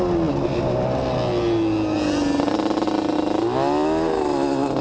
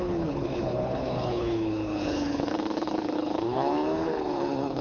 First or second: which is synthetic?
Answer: second